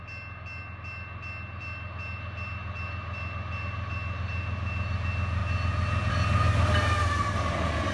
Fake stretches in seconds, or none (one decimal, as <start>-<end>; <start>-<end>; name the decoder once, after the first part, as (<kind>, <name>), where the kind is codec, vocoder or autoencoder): none